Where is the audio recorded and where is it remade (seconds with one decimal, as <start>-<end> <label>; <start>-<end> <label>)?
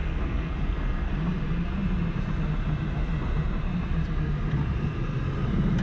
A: 0.0-1.1 remade; 1.1-5.8 recorded